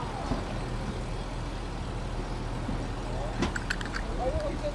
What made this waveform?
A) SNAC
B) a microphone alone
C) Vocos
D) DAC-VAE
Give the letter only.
B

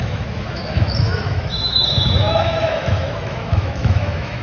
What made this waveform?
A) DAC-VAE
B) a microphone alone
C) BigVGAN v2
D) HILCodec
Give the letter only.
A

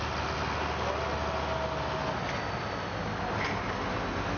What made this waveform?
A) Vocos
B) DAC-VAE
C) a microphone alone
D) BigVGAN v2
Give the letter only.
C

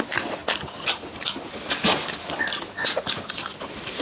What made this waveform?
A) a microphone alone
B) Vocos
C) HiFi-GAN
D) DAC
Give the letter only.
A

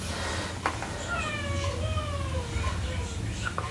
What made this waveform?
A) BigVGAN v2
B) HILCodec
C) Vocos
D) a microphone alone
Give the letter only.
D